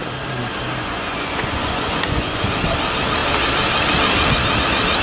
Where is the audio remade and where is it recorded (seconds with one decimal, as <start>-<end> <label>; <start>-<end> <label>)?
0.0-0.8 recorded; 0.8-2.5 remade; 2.5-5.0 recorded